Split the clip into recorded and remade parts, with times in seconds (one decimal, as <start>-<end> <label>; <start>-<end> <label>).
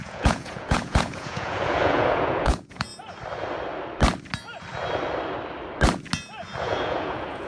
0.0-2.9 remade; 2.9-6.6 recorded; 6.6-7.5 remade